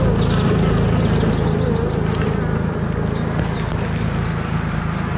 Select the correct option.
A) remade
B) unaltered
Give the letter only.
B